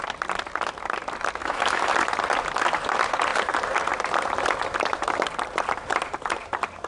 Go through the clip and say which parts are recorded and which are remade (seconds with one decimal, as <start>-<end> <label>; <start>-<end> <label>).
0.0-1.4 recorded; 1.4-1.9 remade; 1.9-6.9 recorded